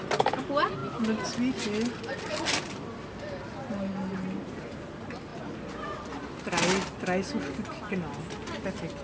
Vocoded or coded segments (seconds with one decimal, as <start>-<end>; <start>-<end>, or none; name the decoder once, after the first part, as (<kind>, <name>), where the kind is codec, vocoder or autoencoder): none